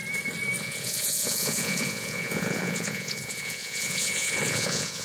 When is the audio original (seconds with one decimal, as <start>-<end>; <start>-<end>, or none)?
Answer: 0.0-0.6